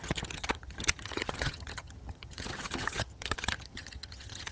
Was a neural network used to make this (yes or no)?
yes